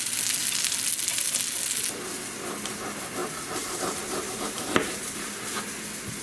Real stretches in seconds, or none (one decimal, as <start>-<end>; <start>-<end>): 0.0-3.2; 5.3-6.2